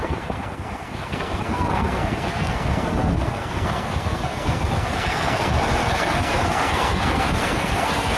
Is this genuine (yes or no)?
no